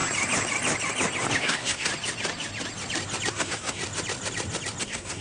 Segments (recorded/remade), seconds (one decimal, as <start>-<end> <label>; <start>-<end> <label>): 0.0-1.4 recorded; 1.4-1.9 remade; 1.9-3.3 recorded; 3.3-3.8 remade; 3.8-4.8 recorded; 4.8-5.2 remade